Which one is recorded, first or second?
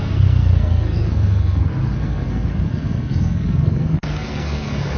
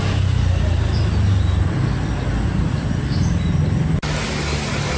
second